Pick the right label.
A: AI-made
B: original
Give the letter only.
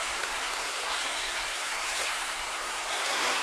A